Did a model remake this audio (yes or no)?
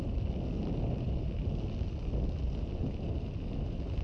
no